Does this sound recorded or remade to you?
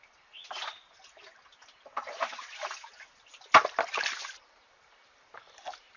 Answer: recorded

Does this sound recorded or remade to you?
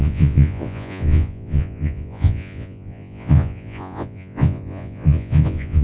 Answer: remade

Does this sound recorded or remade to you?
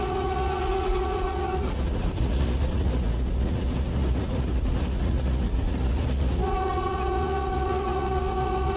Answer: remade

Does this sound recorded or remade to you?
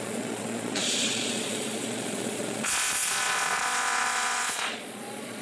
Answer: remade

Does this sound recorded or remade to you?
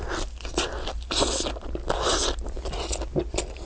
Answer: recorded